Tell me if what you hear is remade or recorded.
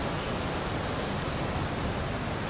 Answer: recorded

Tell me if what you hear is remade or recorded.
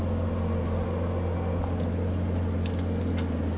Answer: recorded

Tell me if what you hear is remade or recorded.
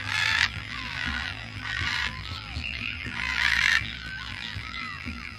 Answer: remade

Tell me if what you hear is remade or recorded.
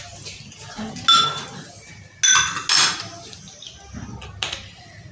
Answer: recorded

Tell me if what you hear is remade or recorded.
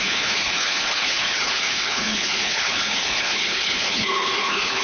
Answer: remade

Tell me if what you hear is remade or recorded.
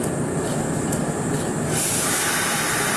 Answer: recorded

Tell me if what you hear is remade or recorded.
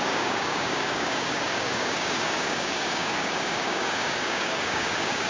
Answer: remade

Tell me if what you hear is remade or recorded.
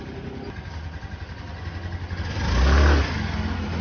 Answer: recorded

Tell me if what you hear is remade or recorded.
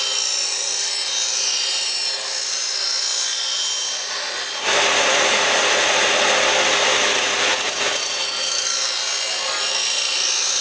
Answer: recorded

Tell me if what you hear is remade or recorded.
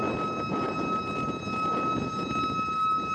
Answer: recorded